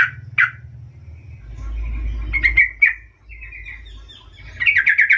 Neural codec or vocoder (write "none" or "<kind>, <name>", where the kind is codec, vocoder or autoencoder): none